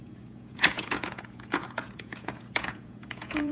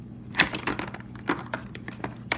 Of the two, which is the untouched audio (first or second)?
second